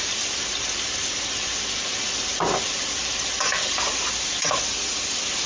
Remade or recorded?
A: remade